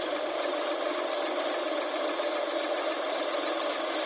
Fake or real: real